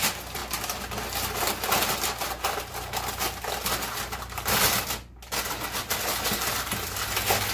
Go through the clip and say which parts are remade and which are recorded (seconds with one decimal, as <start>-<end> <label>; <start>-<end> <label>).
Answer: 0.0-7.5 recorded